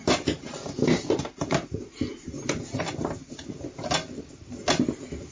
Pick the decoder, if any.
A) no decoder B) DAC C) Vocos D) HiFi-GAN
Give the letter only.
A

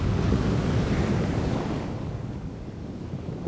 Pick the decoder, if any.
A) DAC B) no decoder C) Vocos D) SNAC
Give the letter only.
A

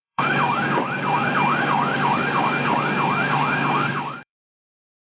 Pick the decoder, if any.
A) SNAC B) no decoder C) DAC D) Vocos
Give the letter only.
C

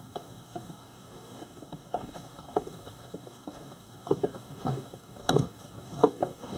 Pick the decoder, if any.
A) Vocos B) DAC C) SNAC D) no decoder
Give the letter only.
B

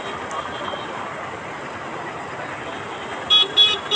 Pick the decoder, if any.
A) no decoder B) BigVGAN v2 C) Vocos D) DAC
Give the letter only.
A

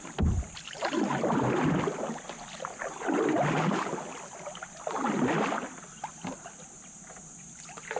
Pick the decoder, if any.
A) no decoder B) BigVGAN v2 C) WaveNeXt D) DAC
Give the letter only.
A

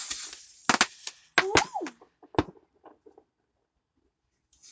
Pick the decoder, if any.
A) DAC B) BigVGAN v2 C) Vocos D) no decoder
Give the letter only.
D